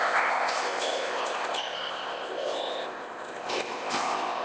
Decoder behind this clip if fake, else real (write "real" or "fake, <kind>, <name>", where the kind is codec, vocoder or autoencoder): fake, codec, ZipCodec